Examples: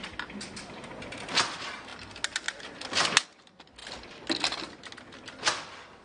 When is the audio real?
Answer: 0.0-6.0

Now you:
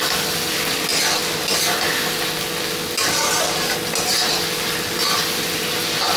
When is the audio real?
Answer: 0.0-6.2

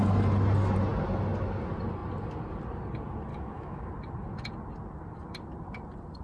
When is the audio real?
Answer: 0.0-3.3; 3.9-6.2

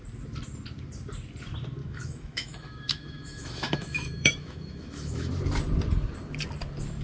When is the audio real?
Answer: 0.0-1.8; 5.3-7.0

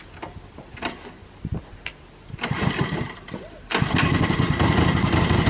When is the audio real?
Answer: 0.0-5.5

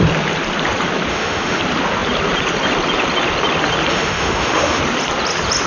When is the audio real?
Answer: 0.0-1.1; 1.6-3.9; 4.8-5.7

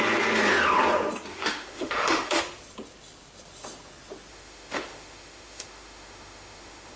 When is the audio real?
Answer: 0.0-1.3; 2.4-4.3